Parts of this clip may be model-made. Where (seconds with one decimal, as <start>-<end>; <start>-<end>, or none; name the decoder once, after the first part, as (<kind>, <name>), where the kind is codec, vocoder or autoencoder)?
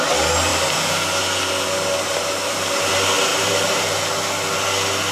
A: 0.5-1.5 (vocoder, BigVGAN v2); 2.1-2.9; 3.3-4.0